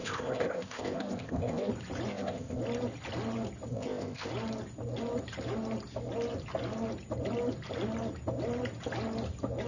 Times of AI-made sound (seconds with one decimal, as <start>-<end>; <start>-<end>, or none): 0.0-1.7; 2.1-2.6; 3.7-4.3